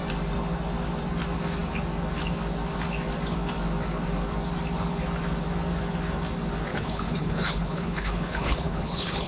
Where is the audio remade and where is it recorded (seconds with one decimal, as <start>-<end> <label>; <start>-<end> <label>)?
0.0-6.7 recorded; 6.7-9.3 remade